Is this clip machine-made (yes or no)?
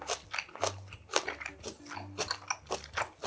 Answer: no